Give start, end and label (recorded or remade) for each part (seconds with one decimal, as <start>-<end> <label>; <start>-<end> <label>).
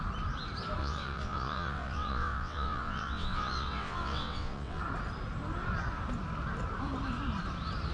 0.0-0.8 recorded; 0.8-4.8 remade; 4.8-7.9 recorded